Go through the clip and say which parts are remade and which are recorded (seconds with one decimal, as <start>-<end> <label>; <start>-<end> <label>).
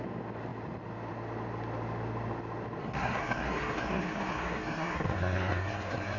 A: 0.0-2.8 recorded; 2.8-6.2 remade